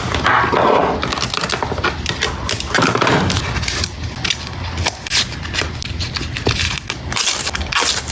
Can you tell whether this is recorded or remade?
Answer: recorded